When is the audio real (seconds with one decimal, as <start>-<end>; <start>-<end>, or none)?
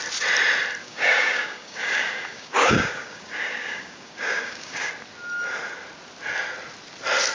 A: 0.0-0.8; 4.9-7.3